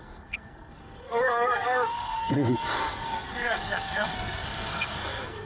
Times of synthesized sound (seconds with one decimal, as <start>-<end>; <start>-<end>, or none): 0.0-5.5